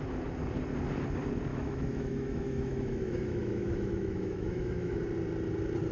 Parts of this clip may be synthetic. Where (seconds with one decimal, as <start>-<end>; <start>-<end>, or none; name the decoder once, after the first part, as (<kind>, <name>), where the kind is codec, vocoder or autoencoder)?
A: 1.5-5.0 (autoencoder, DAC-VAE)